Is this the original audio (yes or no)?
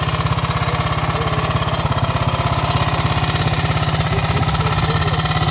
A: yes